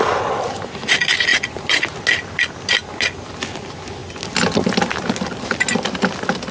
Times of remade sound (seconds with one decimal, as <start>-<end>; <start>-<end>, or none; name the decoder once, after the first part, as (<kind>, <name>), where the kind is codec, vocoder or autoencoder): none